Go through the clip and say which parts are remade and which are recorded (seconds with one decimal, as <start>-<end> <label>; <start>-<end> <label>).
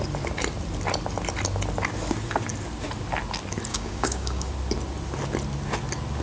0.0-3.7 recorded; 3.7-4.5 remade; 4.5-6.2 recorded